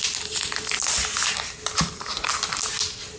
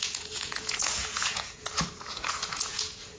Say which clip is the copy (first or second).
second